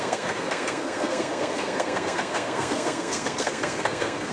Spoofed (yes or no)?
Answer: yes